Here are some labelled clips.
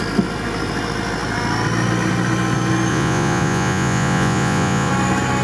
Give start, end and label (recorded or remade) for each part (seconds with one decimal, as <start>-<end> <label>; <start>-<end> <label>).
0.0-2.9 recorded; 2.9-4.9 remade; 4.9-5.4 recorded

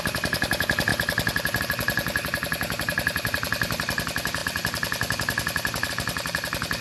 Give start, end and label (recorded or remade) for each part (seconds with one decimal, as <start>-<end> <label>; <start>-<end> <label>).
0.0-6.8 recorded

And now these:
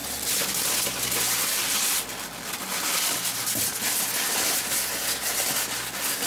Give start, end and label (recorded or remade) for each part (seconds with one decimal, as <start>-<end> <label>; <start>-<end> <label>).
0.0-6.3 recorded

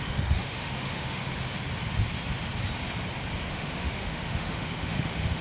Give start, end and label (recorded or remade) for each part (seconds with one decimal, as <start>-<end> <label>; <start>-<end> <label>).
0.0-1.2 remade; 1.2-3.5 recorded; 3.5-5.4 remade

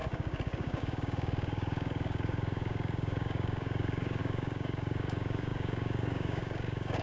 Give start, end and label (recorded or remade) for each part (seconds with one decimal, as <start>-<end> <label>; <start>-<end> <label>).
0.0-7.0 remade

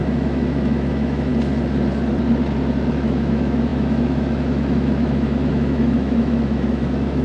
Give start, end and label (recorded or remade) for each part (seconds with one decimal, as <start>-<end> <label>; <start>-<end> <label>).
0.0-1.3 remade; 1.3-2.9 recorded; 2.9-7.2 remade